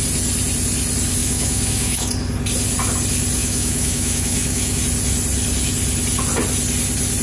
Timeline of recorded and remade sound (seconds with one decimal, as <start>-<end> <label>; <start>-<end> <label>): 0.0-1.2 recorded; 1.2-2.1 remade; 2.1-3.4 recorded; 3.4-4.8 remade; 4.8-7.2 recorded